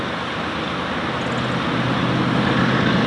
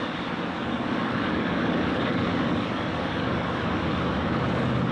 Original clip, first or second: first